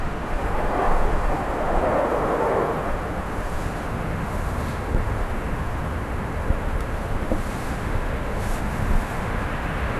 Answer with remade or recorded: remade